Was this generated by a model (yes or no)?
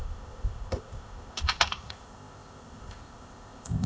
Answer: yes